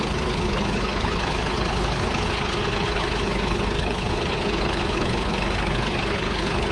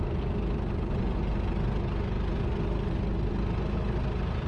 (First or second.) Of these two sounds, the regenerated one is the first